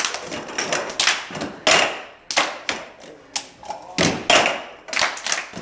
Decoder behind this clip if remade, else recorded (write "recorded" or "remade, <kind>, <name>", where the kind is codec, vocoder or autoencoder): recorded